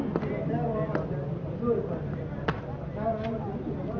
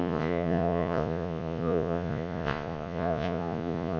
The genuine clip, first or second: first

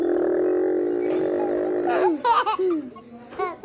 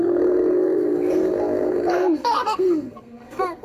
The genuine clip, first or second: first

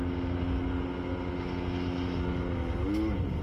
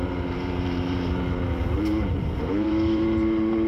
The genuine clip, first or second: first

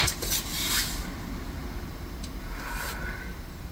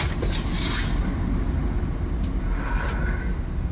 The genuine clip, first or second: second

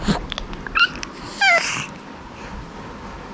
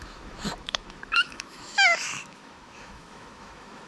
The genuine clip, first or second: first